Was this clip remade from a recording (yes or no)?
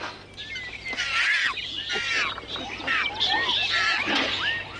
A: no